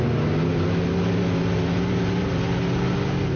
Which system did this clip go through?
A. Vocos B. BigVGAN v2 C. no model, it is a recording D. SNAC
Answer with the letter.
C